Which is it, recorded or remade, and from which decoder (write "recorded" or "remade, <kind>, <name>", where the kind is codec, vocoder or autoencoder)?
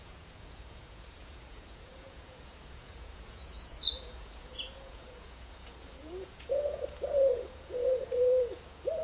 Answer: remade, vocoder, Vocos